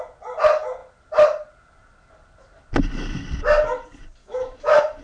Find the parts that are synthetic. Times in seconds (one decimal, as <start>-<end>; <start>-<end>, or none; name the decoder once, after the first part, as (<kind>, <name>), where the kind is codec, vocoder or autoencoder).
4.2-5.0 (autoencoder, DAC-VAE)